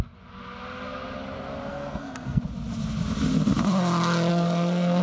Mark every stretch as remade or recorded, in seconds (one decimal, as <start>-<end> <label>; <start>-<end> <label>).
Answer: 0.0-1.7 recorded; 1.7-2.4 remade; 2.4-4.3 recorded; 4.3-5.0 remade